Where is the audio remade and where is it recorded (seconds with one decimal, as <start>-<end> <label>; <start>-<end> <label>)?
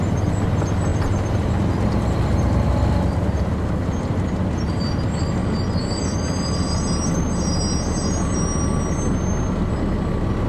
0.0-0.9 recorded; 0.9-1.5 remade; 1.5-10.5 recorded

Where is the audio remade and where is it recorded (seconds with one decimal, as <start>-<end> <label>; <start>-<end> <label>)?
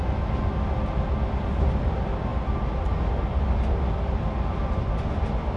0.0-5.6 recorded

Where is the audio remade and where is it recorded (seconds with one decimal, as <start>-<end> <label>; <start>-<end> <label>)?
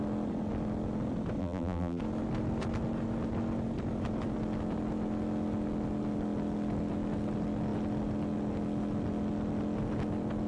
0.0-1.4 recorded; 1.4-2.0 remade; 2.0-10.5 recorded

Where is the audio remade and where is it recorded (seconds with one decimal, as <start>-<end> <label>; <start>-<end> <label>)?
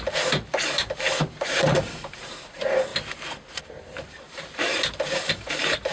0.0-2.9 remade; 2.9-3.6 recorded; 3.6-5.9 remade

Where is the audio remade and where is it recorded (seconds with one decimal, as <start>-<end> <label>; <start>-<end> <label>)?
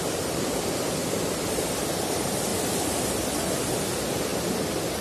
0.0-1.0 recorded; 1.0-1.6 remade; 1.6-5.0 recorded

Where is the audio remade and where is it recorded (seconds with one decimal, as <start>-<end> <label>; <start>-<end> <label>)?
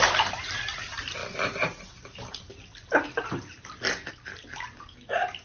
0.0-5.4 recorded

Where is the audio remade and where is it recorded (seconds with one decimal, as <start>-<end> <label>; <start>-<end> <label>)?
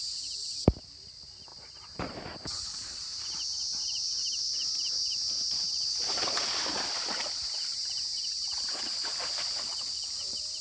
0.0-10.6 recorded